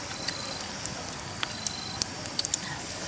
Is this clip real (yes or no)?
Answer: yes